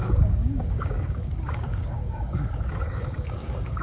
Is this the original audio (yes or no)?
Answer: no